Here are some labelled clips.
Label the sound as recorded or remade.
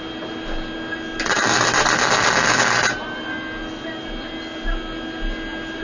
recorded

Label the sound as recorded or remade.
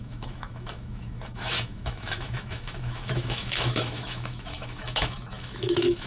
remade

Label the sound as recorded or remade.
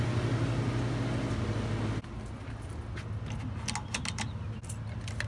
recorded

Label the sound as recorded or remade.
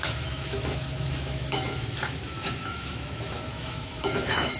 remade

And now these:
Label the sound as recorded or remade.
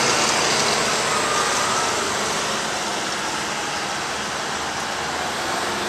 recorded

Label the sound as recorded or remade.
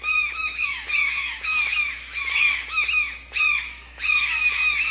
remade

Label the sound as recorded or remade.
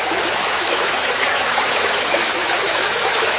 remade